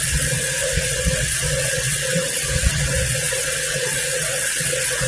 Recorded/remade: remade